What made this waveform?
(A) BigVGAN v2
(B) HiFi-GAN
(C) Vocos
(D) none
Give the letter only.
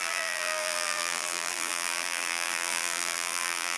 A